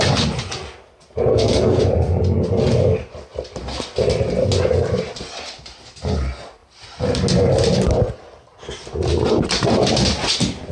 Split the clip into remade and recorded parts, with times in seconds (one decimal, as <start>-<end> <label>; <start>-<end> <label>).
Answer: 0.0-1.3 recorded; 1.3-1.8 remade; 1.8-10.7 recorded